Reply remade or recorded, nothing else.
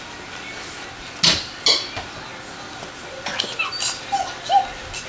recorded